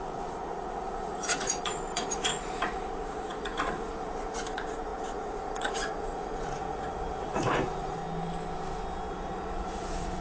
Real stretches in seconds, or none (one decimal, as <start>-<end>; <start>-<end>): 8.0-9.1